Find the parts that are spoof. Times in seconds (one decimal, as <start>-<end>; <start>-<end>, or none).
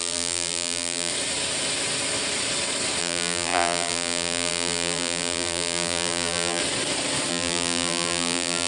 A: 0.0-1.1; 3.0-6.6; 7.3-8.7